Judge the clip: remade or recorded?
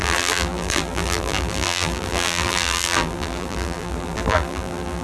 remade